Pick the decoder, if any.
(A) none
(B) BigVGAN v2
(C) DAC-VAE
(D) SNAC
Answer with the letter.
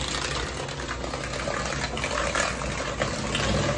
A